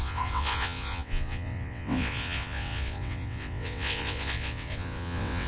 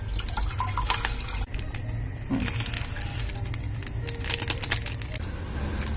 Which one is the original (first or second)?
second